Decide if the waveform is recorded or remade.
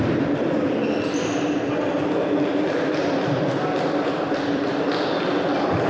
remade